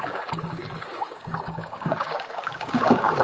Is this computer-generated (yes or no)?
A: yes